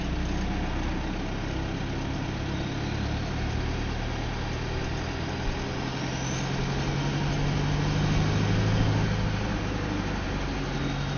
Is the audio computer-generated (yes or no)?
no